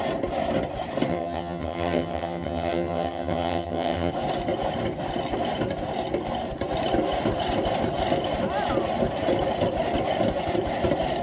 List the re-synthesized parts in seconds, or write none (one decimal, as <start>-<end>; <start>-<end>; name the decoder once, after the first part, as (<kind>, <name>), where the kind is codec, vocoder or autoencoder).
1.1-4.1 (vocoder, HiFi-GAN)